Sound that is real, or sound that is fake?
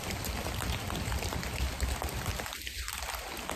fake